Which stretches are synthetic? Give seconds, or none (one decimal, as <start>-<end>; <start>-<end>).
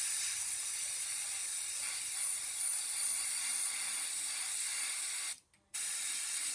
none